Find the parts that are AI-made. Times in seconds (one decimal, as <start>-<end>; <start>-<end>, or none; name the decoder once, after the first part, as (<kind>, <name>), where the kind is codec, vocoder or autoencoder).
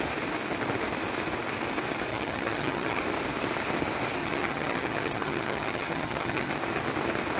2.1-3.0 (vocoder, HiFi-GAN); 4.2-6.5